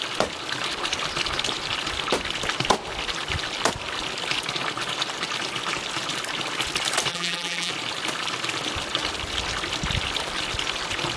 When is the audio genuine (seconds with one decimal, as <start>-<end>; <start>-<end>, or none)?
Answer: 0.0-7.1; 7.7-11.2